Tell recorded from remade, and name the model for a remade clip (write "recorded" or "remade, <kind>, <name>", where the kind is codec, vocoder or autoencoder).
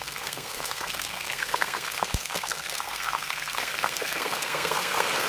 remade, codec, SNAC